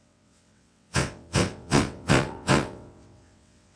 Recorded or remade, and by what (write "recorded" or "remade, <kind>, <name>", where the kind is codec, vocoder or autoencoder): remade, vocoder, WaveNeXt